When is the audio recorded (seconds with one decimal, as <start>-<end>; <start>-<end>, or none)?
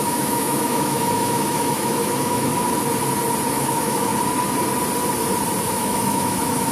2.5-3.5; 4.1-5.6